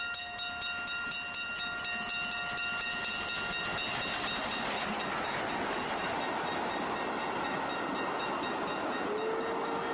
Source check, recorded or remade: recorded